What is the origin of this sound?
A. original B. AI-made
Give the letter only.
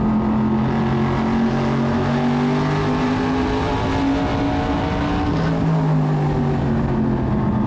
A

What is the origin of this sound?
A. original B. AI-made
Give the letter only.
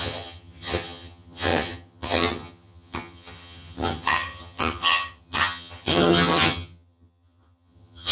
B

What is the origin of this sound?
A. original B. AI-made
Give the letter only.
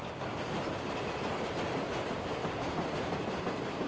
A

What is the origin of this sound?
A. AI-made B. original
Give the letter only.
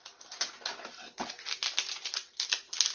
B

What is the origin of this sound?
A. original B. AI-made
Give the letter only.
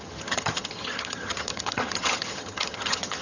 B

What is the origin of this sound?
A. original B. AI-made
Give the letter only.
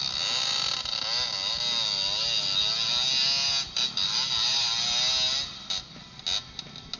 A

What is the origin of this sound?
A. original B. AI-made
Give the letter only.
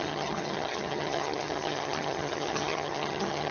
B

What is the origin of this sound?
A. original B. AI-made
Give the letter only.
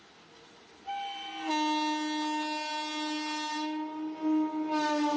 A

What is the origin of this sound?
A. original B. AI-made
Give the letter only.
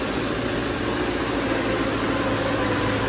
A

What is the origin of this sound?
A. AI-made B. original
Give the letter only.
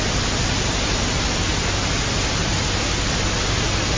B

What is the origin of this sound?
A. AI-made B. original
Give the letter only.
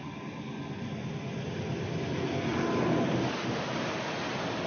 B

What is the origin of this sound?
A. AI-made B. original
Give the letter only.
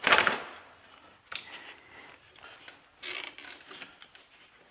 B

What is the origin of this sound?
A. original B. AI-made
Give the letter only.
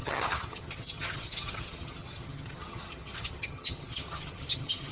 B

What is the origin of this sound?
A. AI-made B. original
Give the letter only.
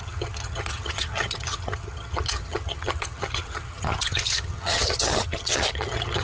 A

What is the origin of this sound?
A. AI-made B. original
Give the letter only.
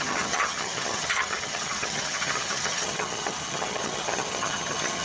A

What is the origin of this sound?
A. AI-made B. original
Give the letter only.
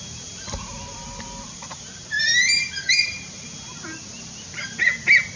B